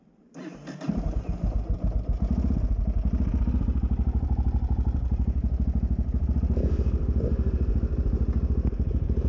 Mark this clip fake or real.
real